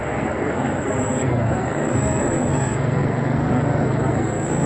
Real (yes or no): no